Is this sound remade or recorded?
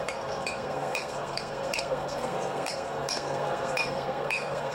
remade